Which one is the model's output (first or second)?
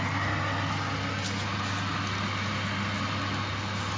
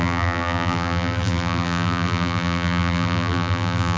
second